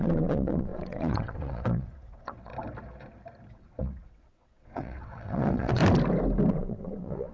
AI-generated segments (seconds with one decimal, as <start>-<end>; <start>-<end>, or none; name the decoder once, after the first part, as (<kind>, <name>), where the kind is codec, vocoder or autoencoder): 0.0-2.5 (vocoder, WaveNeXt); 3.5-5.8; 6.5-7.3